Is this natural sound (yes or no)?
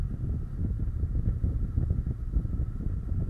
yes